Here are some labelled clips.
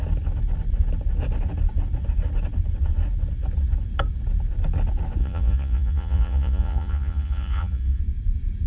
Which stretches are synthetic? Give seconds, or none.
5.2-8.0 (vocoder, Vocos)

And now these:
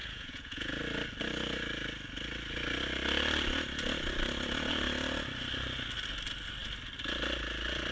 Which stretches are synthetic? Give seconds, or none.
0.0-0.8 (vocoder, Vocos)

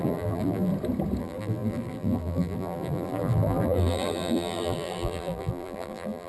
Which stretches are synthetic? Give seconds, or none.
0.0-0.7 (vocoder, BigVGAN v2); 1.2-6.3

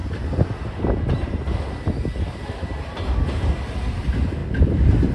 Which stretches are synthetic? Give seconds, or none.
none

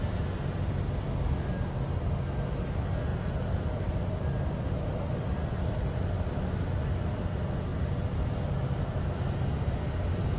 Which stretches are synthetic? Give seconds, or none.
3.1-5.9 (vocoder, BigVGAN v2); 7.7-8.6

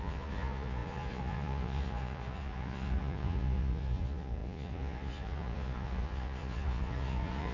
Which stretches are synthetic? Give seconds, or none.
0.0-7.5 (vocoder, Vocos)

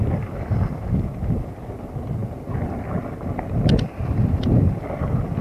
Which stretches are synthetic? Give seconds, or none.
none

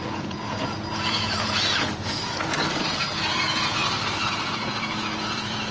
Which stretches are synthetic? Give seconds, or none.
0.0-3.8 (vocoder, Vocos); 4.3-5.7